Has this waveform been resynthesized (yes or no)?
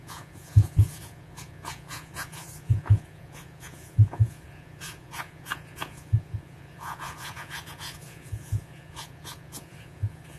yes